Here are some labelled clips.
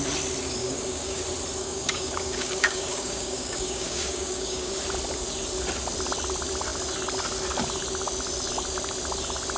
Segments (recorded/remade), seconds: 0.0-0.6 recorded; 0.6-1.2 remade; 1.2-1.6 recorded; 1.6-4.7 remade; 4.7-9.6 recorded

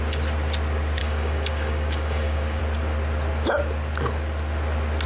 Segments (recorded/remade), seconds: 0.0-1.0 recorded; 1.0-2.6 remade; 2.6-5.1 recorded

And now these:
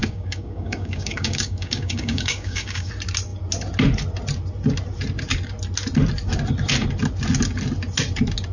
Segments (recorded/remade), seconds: 0.0-2.9 remade; 2.9-8.5 recorded